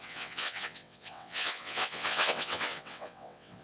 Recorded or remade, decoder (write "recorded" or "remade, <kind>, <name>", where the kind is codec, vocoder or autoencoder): remade, vocoder, WaveNeXt